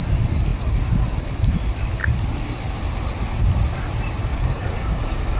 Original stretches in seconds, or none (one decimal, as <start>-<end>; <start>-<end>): 0.0-4.3